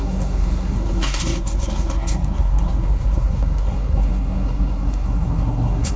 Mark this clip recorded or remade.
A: remade